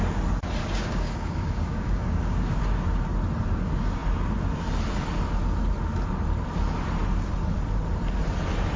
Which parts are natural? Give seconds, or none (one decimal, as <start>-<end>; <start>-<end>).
0.0-0.6; 2.6-8.8